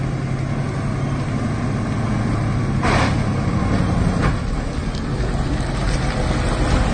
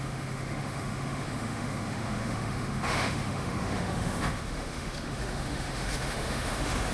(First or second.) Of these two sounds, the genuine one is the first